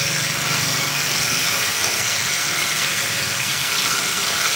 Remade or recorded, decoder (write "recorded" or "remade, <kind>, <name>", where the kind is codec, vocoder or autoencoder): remade, codec, SNAC